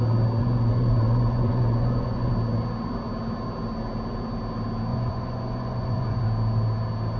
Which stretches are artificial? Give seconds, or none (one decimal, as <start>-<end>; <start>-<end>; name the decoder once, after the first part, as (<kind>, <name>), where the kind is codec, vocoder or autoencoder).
0.4-2.3 (vocoder, Vocos); 4.9-6.2